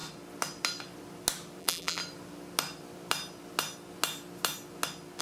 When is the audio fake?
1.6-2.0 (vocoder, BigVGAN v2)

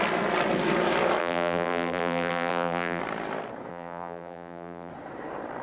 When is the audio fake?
1.2-3.0 (vocoder, BigVGAN v2); 3.7-4.9

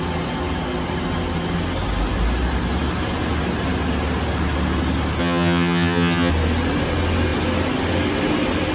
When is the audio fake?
5.2-6.3 (vocoder, HiFi-GAN)

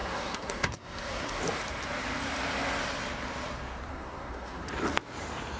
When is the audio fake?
0.0-1.4 (codec, SNAC); 3.9-4.6

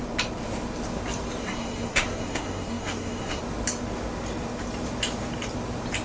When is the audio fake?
1.4-3.4 (codec, SNAC)

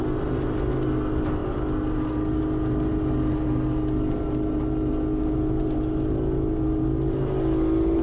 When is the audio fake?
none

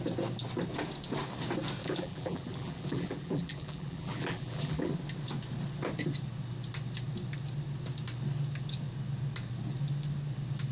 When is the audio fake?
1.8-4.9 (vocoder, BigVGAN v2)

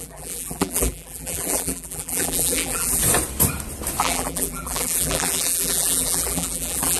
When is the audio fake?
0.0-3.0 (vocoder, BigVGAN v2); 4.0-7.0